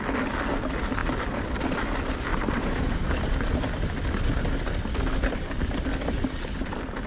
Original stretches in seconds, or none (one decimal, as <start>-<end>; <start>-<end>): 0.0-2.3; 3.7-7.1